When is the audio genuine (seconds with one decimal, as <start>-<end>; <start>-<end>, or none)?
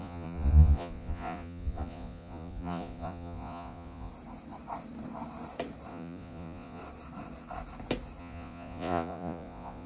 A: 4.1-5.9; 6.8-8.2